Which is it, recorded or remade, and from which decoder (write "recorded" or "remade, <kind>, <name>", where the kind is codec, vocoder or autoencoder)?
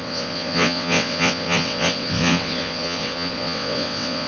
remade, vocoder, WaveNeXt